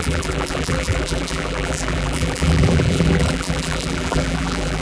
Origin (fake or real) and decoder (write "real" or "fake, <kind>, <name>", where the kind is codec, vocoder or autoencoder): fake, vocoder, BigVGAN v2